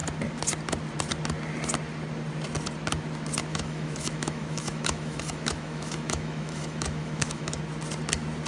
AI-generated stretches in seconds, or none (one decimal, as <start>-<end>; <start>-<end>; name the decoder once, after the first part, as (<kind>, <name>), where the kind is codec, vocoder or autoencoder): 3.5-7.6 (autoencoder, DAC-VAE)